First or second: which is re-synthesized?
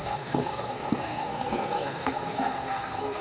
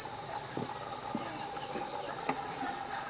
first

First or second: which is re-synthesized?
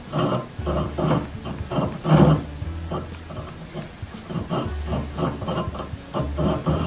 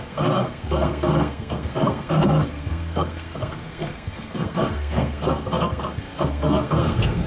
second